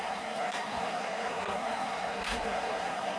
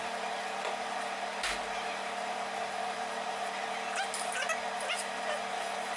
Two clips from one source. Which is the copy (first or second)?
first